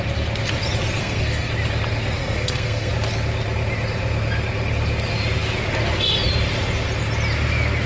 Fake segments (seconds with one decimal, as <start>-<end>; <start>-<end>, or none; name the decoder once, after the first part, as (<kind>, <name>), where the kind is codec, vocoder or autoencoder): 1.0-1.5 (codec, SNAC); 2.2-2.9